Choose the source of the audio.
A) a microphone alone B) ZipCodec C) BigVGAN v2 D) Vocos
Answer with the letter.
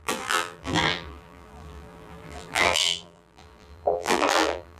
C